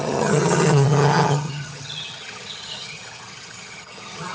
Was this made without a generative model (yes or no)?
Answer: no